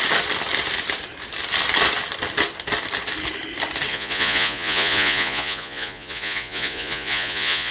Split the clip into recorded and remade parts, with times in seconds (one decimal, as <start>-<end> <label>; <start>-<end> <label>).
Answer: 0.0-3.9 recorded; 3.9-7.7 remade